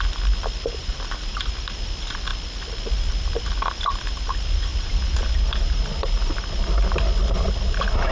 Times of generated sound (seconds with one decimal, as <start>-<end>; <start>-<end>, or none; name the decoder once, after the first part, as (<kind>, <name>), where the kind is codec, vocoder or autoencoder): 0.8-1.5 (vocoder, BigVGAN v2); 4.7-5.3